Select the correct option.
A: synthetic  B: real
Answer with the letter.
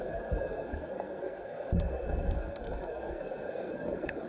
A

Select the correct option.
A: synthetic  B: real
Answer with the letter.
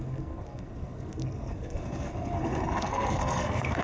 A